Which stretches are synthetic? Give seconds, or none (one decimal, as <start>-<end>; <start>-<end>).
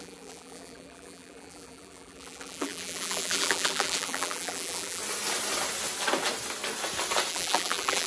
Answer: 0.0-5.0; 7.3-8.1